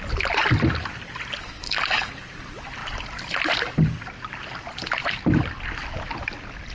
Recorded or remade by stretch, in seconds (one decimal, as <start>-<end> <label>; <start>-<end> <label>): 0.0-1.4 recorded; 1.4-2.1 remade; 2.1-6.7 recorded